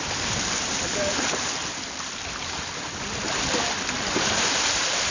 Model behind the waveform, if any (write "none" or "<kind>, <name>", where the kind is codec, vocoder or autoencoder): none